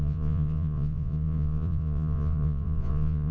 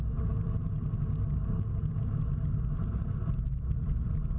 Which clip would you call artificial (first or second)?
first